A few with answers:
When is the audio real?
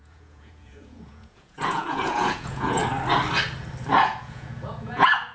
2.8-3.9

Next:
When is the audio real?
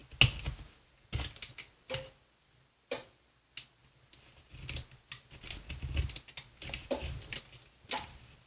0.0-8.5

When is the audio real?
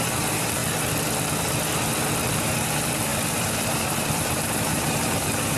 0.6-2.3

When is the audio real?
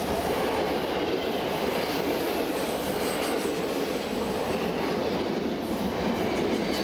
0.0-6.8